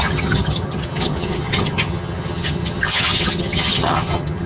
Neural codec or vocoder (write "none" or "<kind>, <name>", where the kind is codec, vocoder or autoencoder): vocoder, HiFi-GAN